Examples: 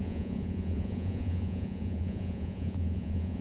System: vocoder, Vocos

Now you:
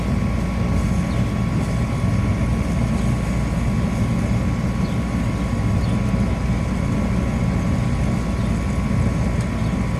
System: none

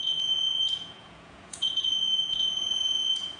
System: vocoder, Vocos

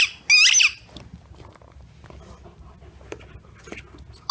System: none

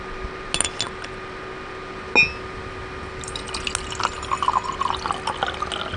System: none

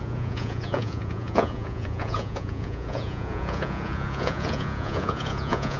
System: vocoder, Vocos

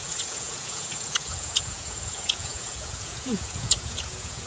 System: vocoder, Vocos